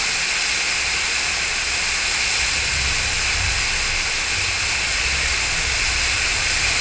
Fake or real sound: real